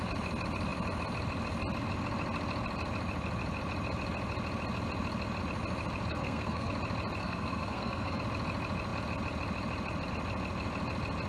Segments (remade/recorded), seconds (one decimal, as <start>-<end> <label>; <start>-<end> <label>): 0.0-6.1 recorded; 6.1-6.7 remade; 6.7-7.2 recorded; 7.2-8.2 remade; 8.2-11.3 recorded